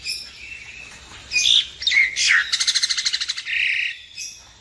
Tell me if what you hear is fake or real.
real